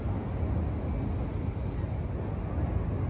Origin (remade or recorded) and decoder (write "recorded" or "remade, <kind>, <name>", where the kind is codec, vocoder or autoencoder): recorded